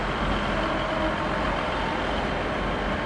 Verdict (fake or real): real